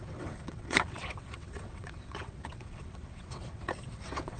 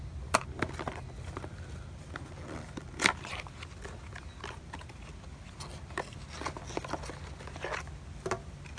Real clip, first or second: second